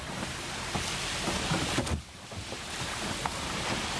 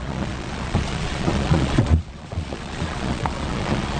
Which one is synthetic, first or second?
second